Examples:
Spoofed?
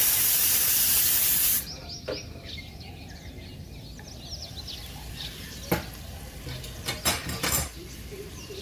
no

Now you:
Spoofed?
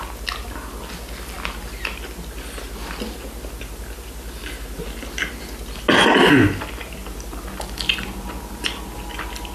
no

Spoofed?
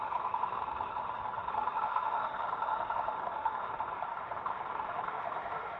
yes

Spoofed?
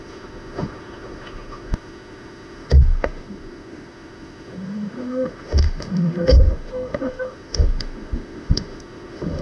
yes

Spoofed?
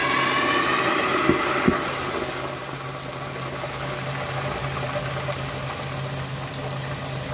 no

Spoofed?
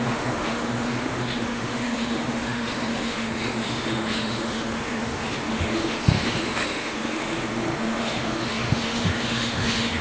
yes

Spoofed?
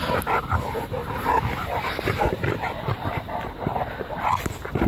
no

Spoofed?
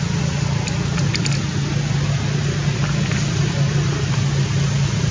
no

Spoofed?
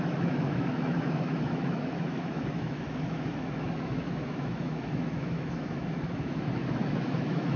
yes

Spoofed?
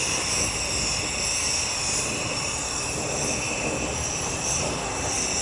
no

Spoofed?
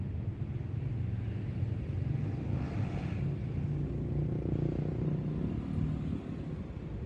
no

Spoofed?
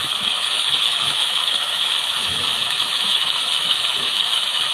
yes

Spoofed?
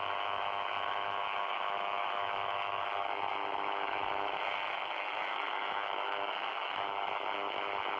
yes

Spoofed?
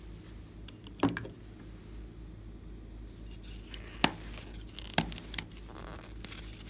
no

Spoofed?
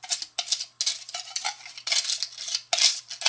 no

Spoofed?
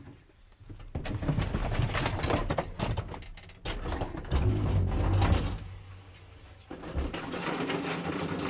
no